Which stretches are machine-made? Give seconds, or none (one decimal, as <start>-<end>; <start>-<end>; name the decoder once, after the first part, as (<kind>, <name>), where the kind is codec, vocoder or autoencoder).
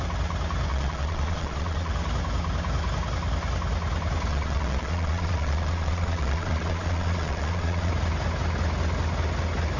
0.7-1.9 (vocoder, Vocos); 4.3-7.9